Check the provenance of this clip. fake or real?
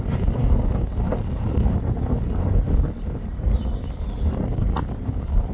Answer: real